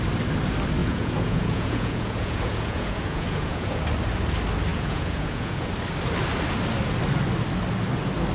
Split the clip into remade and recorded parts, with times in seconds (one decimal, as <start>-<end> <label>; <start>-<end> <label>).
0.0-0.8 recorded; 0.8-3.8 remade; 3.8-4.7 recorded; 4.7-5.7 remade; 5.7-8.3 recorded